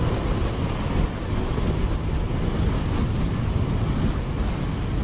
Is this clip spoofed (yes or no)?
no